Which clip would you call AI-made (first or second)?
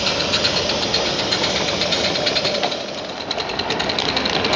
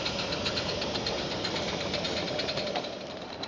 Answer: second